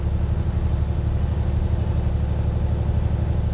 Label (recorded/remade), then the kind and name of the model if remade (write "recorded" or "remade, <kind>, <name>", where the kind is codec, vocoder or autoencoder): recorded